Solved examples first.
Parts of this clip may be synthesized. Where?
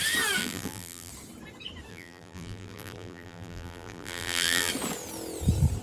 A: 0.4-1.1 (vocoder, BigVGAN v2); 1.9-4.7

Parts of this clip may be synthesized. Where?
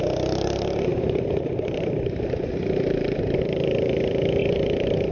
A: 0.0-5.1 (vocoder, BigVGAN v2)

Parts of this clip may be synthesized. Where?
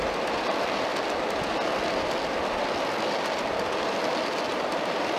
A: 4.5-5.2 (vocoder, BigVGAN v2)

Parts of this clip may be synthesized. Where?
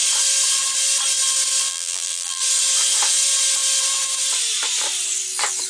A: 1.7-2.4 (vocoder, BigVGAN v2)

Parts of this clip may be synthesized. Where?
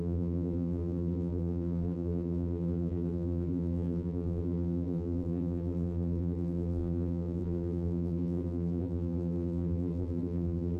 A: 0.0-10.8 (vocoder, BigVGAN v2)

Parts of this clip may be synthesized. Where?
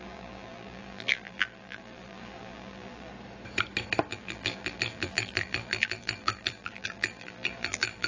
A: 0.0-3.1 (vocoder, BigVGAN v2); 4.1-8.1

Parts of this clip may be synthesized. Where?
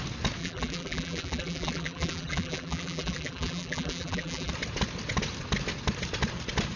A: 0.4-4.5 (vocoder, BigVGAN v2)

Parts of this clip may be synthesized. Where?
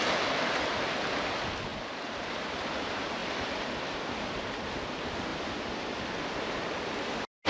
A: 3.2-4.0 (vocoder, BigVGAN v2); 5.3-6.3